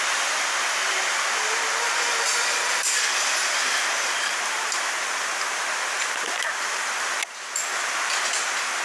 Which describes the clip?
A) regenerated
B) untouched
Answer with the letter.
B